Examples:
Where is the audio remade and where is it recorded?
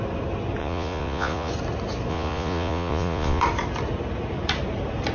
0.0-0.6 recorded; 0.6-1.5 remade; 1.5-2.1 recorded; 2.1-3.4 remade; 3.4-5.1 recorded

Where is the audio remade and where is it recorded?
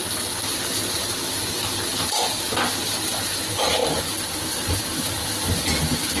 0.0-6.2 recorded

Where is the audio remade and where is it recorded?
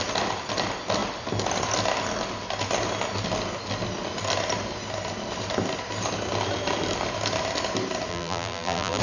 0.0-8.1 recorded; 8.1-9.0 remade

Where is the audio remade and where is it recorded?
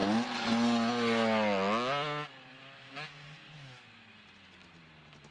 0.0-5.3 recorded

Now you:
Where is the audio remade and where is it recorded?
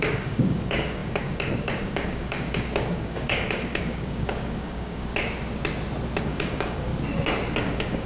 0.0-5.1 remade; 5.1-6.2 recorded; 6.2-6.9 remade; 6.9-7.6 recorded; 7.6-8.1 remade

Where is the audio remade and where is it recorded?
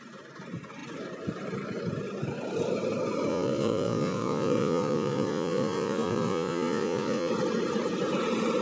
0.0-3.3 recorded; 3.3-7.3 remade; 7.3-8.6 recorded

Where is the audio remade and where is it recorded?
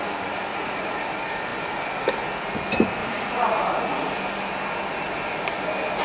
0.0-0.5 recorded; 0.5-1.0 remade; 1.0-3.0 recorded; 3.0-4.2 remade; 4.2-6.0 recorded